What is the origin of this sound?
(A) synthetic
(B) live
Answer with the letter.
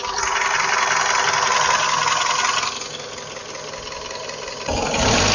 B